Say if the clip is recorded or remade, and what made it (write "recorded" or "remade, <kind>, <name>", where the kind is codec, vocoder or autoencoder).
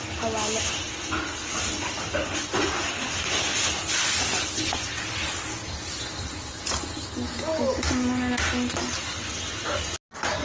recorded